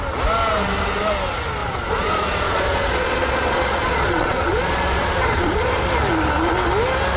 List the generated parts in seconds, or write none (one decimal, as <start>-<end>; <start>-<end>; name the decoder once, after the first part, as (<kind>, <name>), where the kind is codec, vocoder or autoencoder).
1.6-5.9 (vocoder, Vocos)